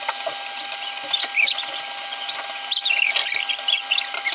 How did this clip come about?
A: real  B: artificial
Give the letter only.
A